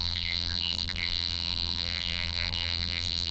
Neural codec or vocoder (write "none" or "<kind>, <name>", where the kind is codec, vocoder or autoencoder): vocoder, BigVGAN v2